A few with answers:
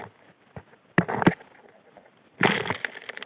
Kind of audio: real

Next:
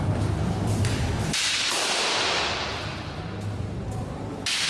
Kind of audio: fake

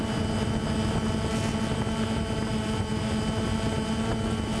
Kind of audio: real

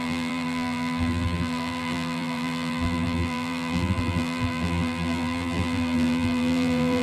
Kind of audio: fake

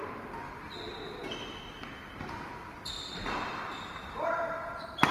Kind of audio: fake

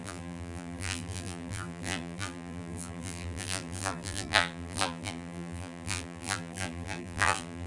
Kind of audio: fake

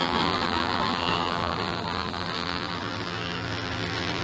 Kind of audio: fake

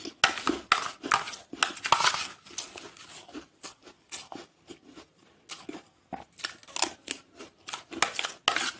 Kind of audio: real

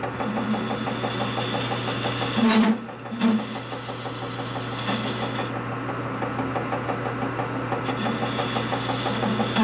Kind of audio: real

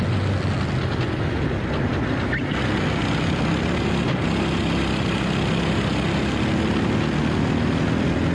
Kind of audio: real